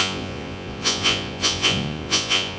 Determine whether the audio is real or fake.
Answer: fake